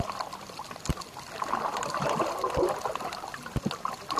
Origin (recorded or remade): recorded